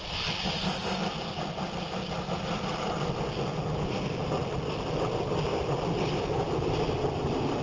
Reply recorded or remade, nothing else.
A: recorded